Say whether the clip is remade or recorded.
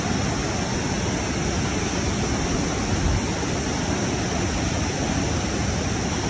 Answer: recorded